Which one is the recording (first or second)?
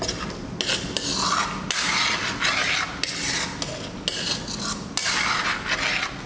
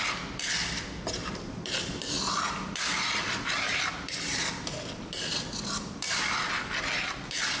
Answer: first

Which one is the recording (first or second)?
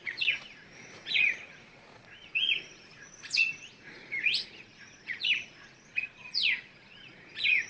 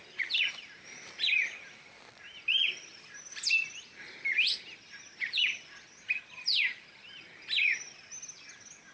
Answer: second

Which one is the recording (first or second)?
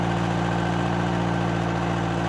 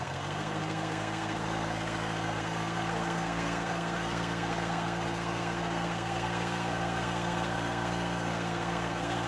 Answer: first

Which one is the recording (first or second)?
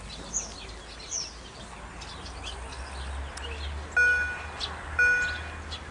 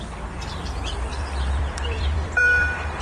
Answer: first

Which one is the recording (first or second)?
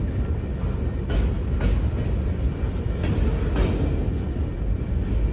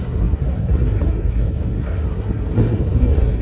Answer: first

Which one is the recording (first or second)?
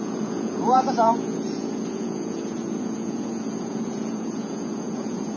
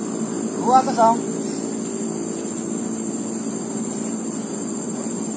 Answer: second